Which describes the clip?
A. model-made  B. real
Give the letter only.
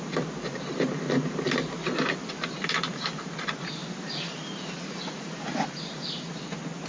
B